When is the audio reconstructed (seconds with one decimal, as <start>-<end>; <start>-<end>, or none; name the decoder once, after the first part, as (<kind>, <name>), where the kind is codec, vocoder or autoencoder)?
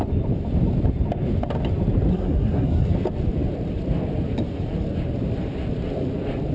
2.1-2.9 (codec, SNAC)